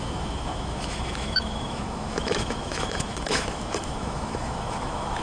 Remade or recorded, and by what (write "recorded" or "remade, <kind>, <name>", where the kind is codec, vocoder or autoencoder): remade, autoencoder, DAC-VAE